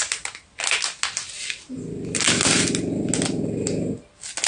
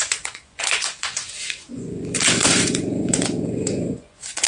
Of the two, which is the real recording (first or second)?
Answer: first